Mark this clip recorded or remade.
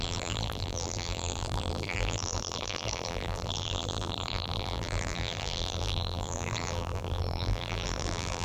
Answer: remade